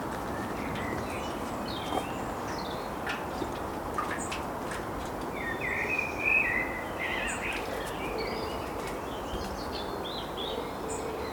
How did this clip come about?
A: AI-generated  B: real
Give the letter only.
B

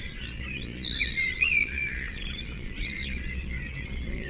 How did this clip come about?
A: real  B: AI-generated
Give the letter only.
B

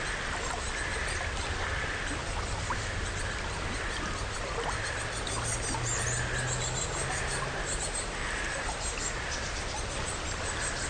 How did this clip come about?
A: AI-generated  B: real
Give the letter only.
B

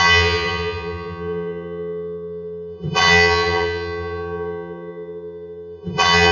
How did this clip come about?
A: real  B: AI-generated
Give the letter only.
B